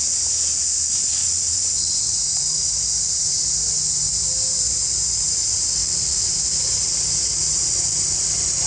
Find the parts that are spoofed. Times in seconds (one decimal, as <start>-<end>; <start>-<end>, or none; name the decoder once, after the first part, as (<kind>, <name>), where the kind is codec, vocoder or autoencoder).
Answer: 1.2-2.7 (vocoder, Vocos); 5.8-6.4